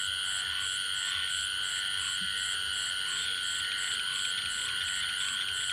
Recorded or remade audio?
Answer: recorded